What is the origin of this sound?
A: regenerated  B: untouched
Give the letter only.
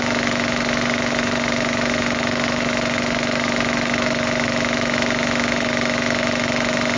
A